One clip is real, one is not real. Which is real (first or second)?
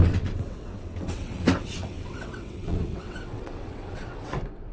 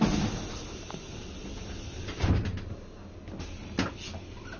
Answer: second